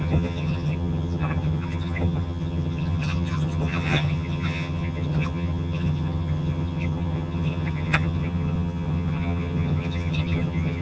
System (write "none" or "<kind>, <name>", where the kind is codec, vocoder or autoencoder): vocoder, HiFi-GAN